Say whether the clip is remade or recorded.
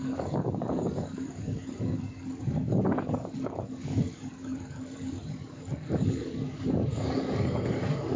remade